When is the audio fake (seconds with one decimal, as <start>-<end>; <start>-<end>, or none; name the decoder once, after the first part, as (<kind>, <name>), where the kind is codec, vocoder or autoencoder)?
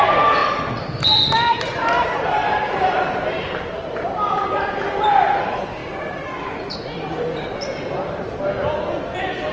0.0-0.4 (vocoder, BigVGAN v2); 0.9-5.8; 6.4-9.5